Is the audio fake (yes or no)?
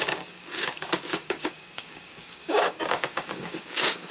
yes